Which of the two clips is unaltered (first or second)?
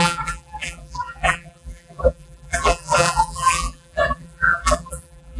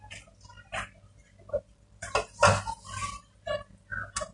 second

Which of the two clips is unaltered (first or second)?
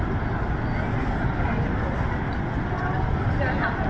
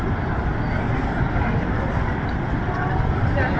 first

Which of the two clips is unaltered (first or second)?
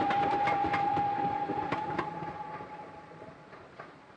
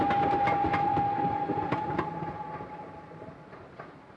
second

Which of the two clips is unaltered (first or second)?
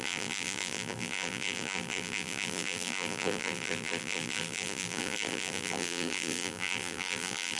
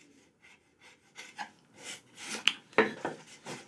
second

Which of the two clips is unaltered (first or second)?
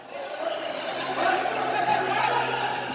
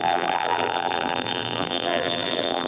first